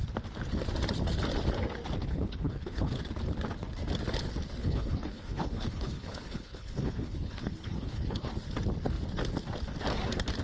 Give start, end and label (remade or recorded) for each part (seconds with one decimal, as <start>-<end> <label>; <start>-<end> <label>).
0.0-2.0 recorded; 2.0-3.0 remade; 3.0-4.6 recorded; 4.6-8.3 remade; 8.3-10.4 recorded